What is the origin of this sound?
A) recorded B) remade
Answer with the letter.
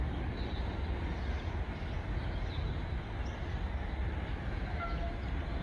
A